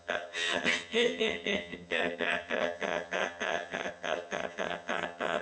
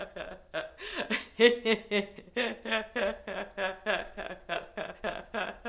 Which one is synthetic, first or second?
first